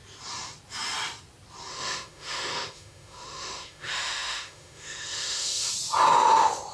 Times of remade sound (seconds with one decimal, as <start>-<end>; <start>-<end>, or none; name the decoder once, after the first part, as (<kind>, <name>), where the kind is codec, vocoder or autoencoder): 1.7-5.7 (autoencoder, DAC-VAE)